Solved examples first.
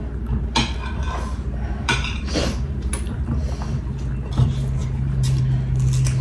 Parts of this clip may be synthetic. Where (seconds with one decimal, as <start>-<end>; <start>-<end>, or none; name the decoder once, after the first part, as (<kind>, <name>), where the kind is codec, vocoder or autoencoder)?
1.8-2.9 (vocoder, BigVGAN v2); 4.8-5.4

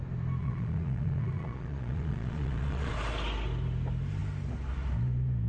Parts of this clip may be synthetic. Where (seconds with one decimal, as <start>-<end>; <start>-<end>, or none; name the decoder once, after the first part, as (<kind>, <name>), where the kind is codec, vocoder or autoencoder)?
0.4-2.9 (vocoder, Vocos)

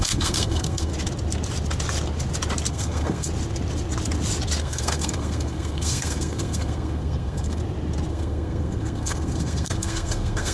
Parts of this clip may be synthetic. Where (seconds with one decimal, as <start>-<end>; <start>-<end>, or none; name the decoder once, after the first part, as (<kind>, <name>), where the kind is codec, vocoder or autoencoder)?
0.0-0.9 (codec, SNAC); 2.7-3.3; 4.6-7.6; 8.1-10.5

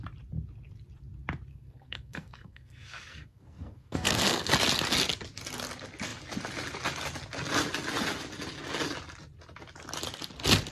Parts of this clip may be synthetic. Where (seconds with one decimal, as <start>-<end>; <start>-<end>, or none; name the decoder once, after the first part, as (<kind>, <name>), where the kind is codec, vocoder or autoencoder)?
1.5-4.5 (codec, SNAC)

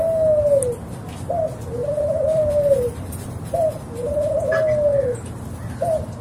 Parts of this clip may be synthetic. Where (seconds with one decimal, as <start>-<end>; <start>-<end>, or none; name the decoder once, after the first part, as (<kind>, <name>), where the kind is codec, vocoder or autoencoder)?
1.8-4.3 (vocoder, BigVGAN v2); 4.9-5.8